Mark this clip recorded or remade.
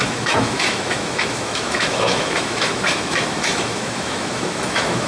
remade